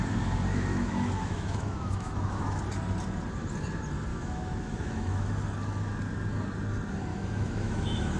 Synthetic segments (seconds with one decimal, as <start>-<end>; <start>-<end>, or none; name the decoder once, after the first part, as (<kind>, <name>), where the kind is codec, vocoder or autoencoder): 0.5-2.6 (autoencoder, DAC-VAE); 4.1-5.3; 7.1-8.2